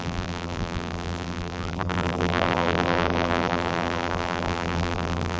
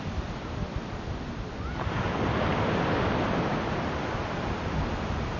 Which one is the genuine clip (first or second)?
second